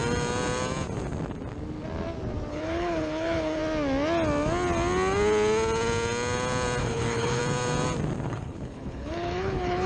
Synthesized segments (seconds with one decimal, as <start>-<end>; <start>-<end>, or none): 2.5-3.6; 6.8-7.4; 8.2-9.9